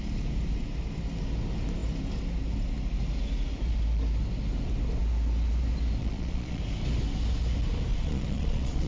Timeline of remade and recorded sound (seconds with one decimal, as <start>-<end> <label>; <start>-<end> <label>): 0.0-6.0 recorded; 6.0-6.6 remade; 6.6-7.9 recorded; 7.9-8.9 remade

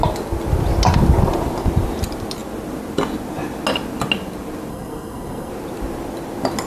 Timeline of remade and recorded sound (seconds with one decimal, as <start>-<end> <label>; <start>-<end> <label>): 0.0-4.7 recorded; 4.7-5.5 remade; 5.5-6.7 recorded

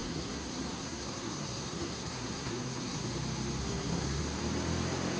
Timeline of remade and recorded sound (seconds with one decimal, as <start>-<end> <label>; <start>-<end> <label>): 0.0-3.1 remade; 3.1-3.6 recorded; 3.6-4.2 remade; 4.2-5.2 recorded

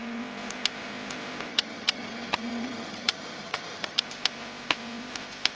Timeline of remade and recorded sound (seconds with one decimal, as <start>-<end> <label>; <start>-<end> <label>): 0.0-1.5 recorded; 1.5-4.0 remade; 4.0-5.5 recorded

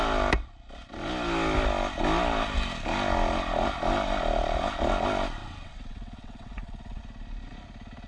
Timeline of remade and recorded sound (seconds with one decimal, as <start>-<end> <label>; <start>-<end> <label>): 0.0-5.4 recorded; 5.4-7.0 remade; 7.0-8.1 recorded

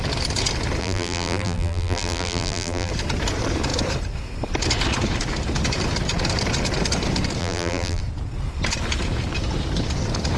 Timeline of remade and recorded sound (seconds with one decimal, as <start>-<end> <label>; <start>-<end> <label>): 0.0-0.8 recorded; 0.8-2.9 remade; 2.9-7.4 recorded; 7.4-8.0 remade; 8.0-10.4 recorded